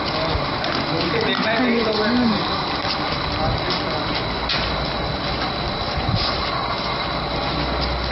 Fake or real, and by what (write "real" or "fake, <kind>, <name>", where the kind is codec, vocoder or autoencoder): real